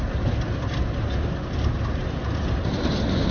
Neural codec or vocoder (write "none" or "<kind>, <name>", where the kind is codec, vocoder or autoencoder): none